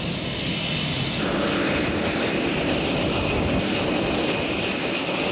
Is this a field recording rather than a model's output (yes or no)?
yes